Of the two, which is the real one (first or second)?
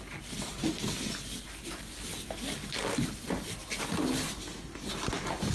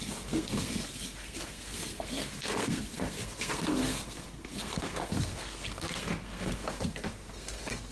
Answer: first